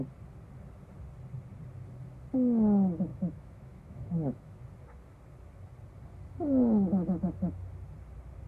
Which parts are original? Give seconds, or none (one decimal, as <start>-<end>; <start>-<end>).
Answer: 0.0-3.1; 4.6-8.5